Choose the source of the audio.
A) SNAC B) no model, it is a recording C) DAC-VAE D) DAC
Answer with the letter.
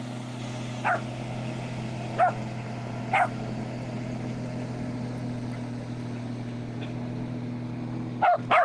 B